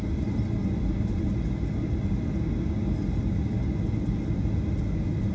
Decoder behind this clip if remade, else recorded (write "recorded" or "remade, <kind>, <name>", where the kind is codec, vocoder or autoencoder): recorded